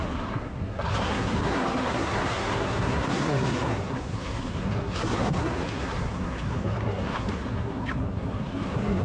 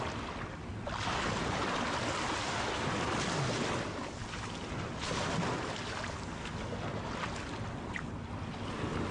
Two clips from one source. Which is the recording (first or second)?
second